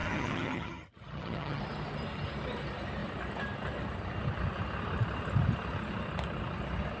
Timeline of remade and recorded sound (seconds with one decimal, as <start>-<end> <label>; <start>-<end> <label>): 0.0-1.6 remade; 1.6-7.0 recorded